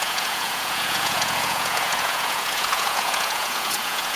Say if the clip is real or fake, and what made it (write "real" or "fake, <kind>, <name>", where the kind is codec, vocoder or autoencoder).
fake, vocoder, Vocos